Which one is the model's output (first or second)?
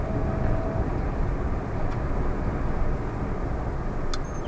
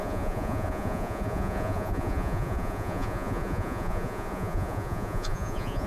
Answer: second